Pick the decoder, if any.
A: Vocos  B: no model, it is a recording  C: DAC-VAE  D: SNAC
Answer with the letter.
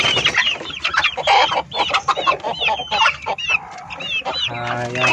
B